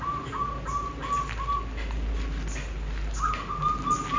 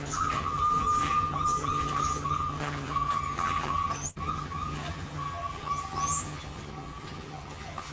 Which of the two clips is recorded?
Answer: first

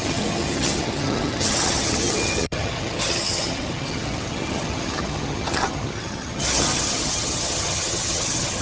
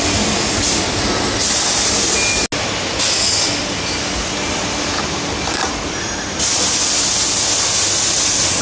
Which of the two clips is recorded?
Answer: second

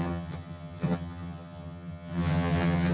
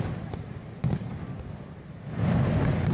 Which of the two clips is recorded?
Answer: second